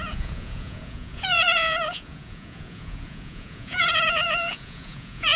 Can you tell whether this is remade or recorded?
remade